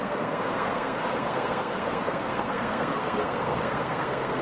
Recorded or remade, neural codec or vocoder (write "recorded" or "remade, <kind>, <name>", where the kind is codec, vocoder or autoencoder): remade, codec, SNAC